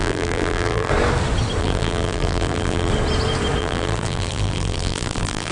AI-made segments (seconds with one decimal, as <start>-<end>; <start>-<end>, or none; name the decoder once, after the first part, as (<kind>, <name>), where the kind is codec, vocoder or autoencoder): 0.0-0.9 (vocoder, BigVGAN v2); 1.6-2.9; 3.6-5.5